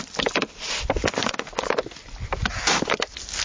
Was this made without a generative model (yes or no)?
yes